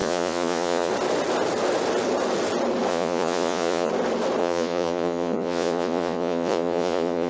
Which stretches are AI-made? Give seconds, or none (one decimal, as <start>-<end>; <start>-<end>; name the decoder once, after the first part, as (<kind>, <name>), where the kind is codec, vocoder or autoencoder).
0.0-0.9 (vocoder, Vocos); 2.9-3.9; 4.4-7.3